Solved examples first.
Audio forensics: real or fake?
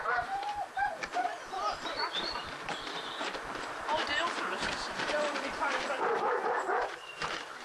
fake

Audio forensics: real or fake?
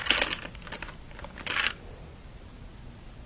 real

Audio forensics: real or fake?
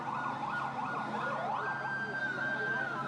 real